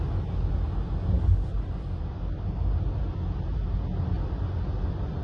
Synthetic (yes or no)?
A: no